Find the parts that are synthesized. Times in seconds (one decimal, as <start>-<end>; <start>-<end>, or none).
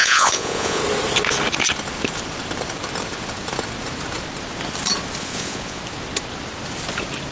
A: 0.0-0.8; 5.2-5.8